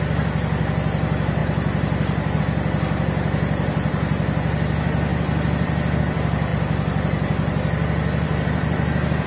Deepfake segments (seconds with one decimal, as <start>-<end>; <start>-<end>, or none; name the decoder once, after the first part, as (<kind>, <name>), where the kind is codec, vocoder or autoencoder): none